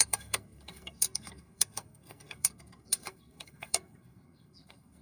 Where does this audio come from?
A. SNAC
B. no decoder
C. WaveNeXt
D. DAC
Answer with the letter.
A